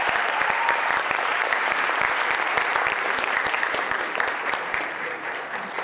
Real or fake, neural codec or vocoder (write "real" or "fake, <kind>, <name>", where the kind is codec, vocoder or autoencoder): fake, vocoder, BigVGAN v2